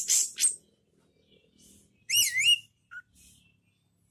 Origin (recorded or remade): recorded